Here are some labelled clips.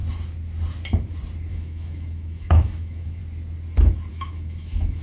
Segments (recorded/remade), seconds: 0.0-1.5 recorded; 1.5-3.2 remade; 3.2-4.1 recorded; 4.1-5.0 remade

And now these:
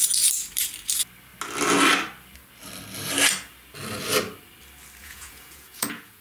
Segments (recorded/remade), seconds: 0.0-5.0 recorded; 5.0-6.2 remade

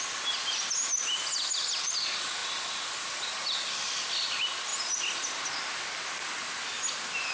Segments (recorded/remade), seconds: 0.0-7.3 recorded